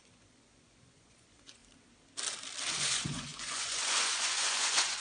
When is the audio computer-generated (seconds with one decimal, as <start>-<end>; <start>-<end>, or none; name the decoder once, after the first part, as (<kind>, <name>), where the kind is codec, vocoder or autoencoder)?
0.0-1.6 (vocoder, Vocos); 2.7-5.0